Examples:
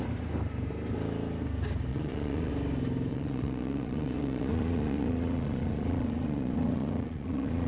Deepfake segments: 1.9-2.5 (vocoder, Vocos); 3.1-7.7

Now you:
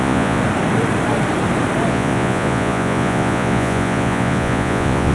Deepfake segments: 0.0-0.4 (vocoder, Vocos); 1.9-5.1

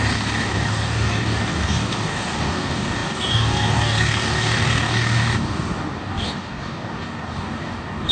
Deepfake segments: 0.0-8.1 (codec, DAC)